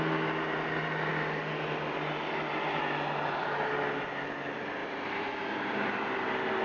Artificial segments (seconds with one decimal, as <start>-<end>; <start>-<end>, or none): 4.8-6.0